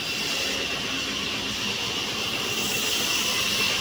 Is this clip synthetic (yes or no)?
no